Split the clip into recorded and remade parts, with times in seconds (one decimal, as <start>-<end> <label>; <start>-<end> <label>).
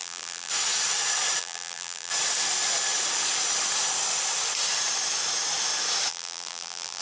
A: 0.0-0.5 remade; 0.5-1.4 recorded; 1.4-2.1 remade; 2.1-6.1 recorded; 6.1-7.0 remade